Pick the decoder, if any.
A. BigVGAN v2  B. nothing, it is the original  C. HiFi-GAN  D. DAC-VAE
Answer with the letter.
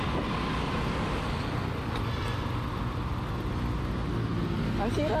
B